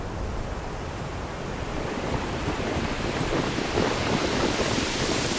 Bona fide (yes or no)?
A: yes